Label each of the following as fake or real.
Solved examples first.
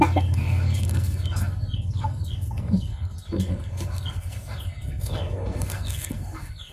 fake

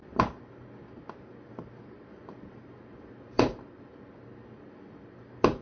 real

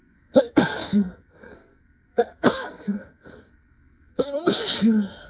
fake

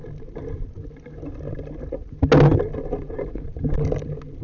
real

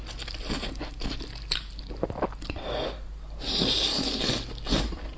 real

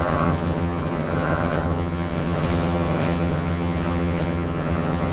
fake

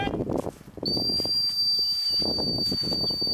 real